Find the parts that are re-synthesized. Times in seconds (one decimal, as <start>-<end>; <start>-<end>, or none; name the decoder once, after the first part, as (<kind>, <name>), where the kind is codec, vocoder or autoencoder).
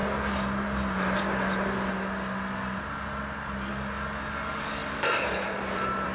4.8-6.1 (vocoder, BigVGAN v2)